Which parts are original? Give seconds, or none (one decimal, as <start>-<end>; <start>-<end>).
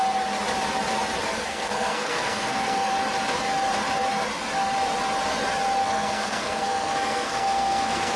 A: 0.0-1.5; 2.9-5.8